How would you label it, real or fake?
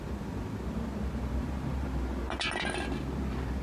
real